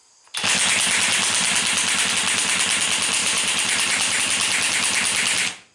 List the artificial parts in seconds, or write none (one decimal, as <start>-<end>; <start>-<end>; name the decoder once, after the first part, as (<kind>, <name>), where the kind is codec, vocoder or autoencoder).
3.2-4.2 (vocoder, BigVGAN v2)